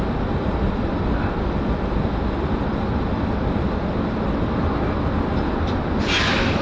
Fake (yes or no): yes